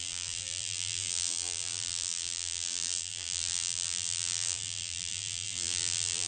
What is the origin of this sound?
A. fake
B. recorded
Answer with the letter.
A